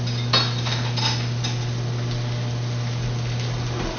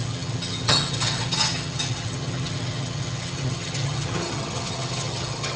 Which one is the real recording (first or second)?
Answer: first